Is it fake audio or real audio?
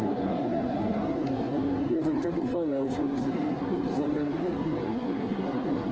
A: fake